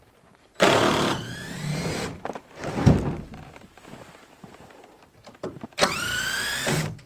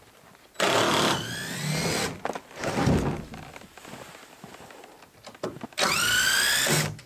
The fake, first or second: first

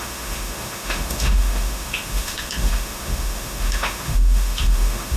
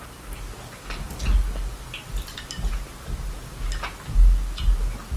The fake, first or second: first